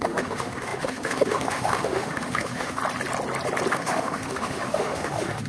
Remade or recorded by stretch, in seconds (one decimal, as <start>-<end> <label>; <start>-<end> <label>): 0.0-2.8 remade; 2.8-3.7 recorded; 3.7-5.5 remade

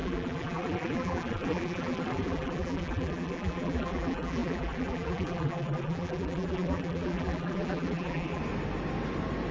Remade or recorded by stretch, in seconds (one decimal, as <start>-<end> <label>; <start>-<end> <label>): 0.0-8.4 remade; 8.4-9.5 recorded

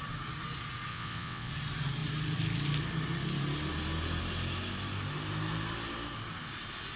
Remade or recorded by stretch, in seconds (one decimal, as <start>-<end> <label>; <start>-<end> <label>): 0.0-0.9 recorded; 0.9-1.5 remade; 1.5-7.0 recorded

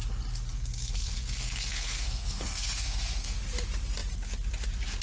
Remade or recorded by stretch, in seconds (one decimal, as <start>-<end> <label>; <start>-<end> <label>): 0.0-0.5 recorded; 0.5-3.4 remade; 3.4-5.0 recorded